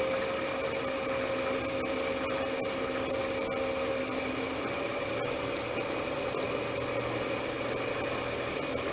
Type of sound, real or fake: fake